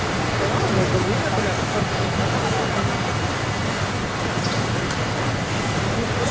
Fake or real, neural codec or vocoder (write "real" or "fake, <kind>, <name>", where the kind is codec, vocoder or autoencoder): real